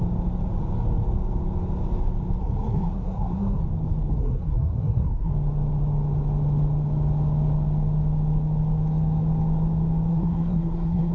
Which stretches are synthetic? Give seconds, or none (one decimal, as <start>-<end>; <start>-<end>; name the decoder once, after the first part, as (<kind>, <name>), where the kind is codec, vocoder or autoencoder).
2.4-3.6 (codec, SNAC); 4.2-5.3; 10.1-11.1

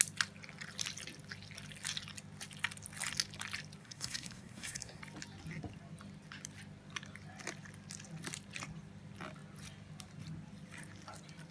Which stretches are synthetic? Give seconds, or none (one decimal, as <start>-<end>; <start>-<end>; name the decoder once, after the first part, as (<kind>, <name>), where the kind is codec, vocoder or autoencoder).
3.8-5.0 (codec, SNAC)

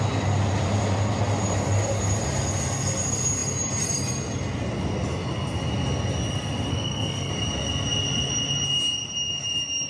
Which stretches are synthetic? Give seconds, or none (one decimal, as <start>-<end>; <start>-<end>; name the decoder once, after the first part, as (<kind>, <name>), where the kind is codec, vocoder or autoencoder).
6.7-7.3 (codec, SNAC)

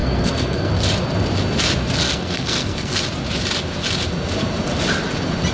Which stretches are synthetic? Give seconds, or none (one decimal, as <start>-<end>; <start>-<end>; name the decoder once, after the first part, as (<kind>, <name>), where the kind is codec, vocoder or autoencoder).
0.0-0.7 (codec, SNAC); 2.0-3.0

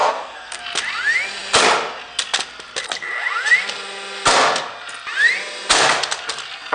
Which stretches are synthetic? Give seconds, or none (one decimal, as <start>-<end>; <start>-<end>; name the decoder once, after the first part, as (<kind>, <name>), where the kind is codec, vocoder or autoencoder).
0.0-0.6 (codec, SNAC)

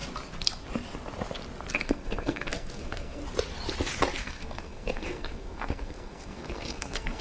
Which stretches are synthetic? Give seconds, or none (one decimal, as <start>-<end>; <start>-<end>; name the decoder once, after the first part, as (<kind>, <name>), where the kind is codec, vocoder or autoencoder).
1.7-3.2 (codec, SNAC); 4.2-7.2

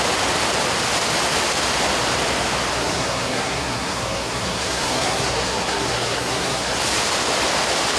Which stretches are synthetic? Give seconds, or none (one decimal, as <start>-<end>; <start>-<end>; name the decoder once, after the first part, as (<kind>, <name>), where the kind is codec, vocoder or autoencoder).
2.7-6.8 (codec, SNAC)

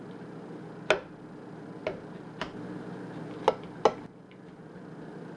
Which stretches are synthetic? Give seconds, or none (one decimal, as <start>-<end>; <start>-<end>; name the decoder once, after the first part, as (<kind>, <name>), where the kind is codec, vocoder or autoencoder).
none